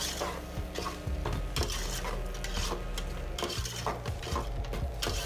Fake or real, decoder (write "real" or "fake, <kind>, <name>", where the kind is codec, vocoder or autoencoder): real